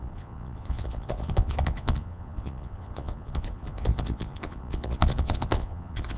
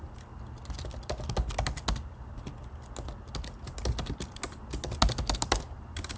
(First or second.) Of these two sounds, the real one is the second